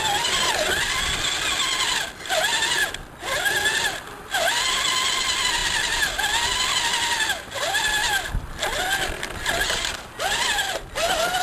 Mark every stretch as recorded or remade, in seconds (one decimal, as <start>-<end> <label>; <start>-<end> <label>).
0.0-11.4 recorded